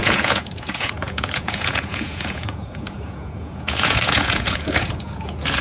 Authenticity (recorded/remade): remade